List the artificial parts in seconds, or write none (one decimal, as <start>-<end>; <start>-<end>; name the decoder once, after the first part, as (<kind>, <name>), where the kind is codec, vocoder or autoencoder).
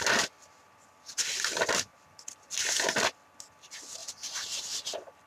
1.9-2.7 (vocoder, BigVGAN v2)